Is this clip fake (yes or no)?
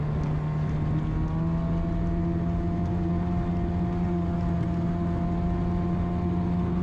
no